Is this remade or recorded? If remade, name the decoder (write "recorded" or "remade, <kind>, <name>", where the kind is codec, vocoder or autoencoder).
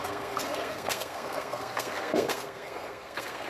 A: remade, codec, SNAC